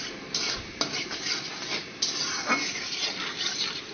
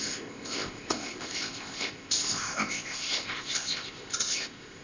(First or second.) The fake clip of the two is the second